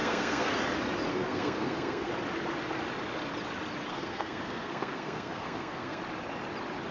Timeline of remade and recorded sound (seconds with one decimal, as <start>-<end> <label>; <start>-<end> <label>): 0.0-0.5 remade; 0.5-1.1 recorded; 1.1-2.1 remade; 2.1-3.9 recorded; 3.9-6.0 remade; 6.0-6.9 recorded